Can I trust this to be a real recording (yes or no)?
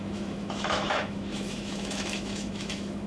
no